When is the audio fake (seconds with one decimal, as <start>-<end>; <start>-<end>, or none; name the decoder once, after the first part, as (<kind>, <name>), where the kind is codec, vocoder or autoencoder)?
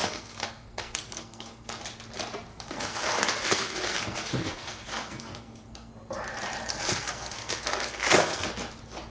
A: 0.0-1.8 (codec, SNAC); 2.5-5.9; 6.7-8.5